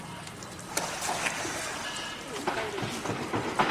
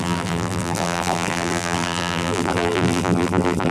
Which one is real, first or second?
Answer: first